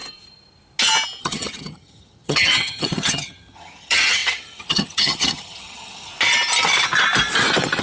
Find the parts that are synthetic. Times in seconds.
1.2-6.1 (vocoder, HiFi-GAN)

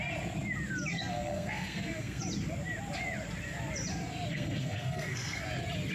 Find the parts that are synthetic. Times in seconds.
0.9-2.2 (codec, SNAC); 4.3-5.4

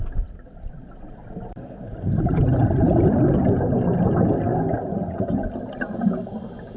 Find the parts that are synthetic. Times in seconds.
0.0-3.5 (vocoder, BigVGAN v2)

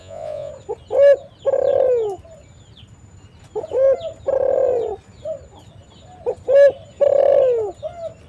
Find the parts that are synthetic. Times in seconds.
0.0-0.5 (vocoder, Vocos)

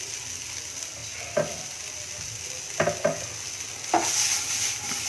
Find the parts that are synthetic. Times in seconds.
none

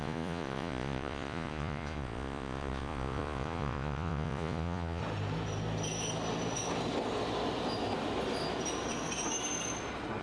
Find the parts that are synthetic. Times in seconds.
0.0-5.0 (vocoder, Vocos)

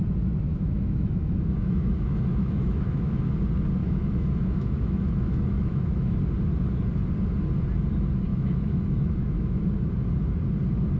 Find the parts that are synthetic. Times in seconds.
0.5-3.3 (autoencoder, DAC-VAE); 3.8-6.2; 8.3-9.6

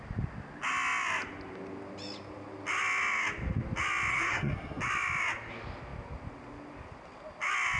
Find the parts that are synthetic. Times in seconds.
4.1-4.8 (codec, SNAC)